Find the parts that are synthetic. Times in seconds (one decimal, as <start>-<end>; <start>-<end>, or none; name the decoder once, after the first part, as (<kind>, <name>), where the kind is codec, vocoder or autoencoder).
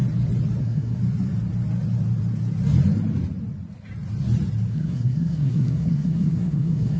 0.6-1.0 (codec, SNAC); 4.7-7.0